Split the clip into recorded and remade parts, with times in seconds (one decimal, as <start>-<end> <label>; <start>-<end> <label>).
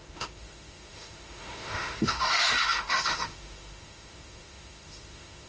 0.0-5.5 remade